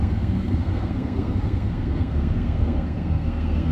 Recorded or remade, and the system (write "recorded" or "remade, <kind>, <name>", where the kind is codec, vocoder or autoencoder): remade, codec, SNAC